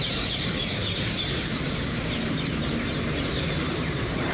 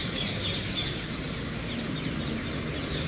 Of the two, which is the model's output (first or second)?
first